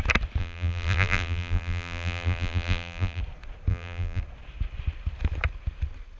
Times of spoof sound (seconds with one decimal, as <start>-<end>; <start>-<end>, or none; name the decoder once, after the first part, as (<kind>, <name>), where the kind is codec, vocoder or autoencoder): 0.4-3.2 (vocoder, BigVGAN v2); 3.7-4.2